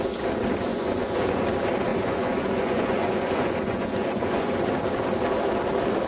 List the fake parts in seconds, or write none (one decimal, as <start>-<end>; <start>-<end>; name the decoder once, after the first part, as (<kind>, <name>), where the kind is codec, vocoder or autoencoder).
0.7-1.4 (vocoder, Vocos); 1.9-4.7